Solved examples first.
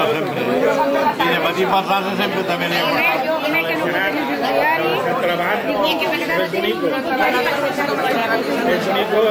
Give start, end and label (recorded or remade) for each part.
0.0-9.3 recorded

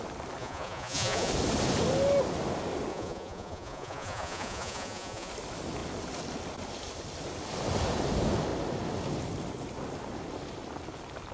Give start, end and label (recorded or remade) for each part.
0.0-0.4 recorded; 0.4-1.3 remade; 1.3-2.9 recorded; 2.9-5.3 remade; 5.3-11.3 recorded

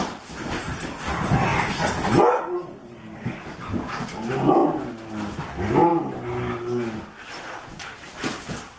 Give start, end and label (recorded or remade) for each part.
0.0-8.8 recorded

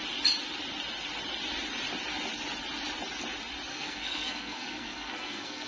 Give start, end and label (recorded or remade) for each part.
0.0-3.7 recorded; 3.7-5.7 remade

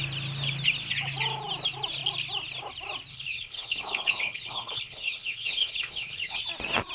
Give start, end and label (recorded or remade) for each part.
0.0-3.1 recorded; 3.1-6.4 remade; 6.4-6.9 recorded

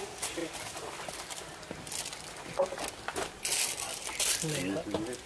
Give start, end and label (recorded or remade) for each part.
0.0-0.4 recorded; 0.4-1.5 remade; 1.5-3.5 recorded; 3.5-5.3 remade